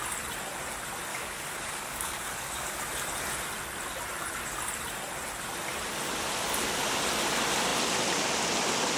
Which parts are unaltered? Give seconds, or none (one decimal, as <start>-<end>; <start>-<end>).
0.0-1.1; 2.8-9.0